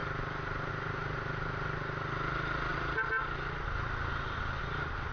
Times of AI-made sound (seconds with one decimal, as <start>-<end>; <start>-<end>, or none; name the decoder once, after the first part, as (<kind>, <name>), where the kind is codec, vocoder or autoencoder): 0.0-0.7 (vocoder, BigVGAN v2)